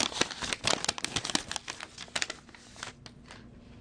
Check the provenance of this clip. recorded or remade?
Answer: recorded